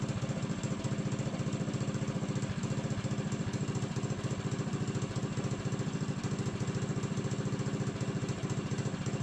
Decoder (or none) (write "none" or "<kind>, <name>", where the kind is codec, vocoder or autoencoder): none